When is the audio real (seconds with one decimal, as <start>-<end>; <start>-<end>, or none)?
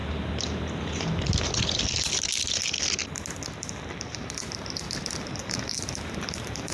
0.0-3.6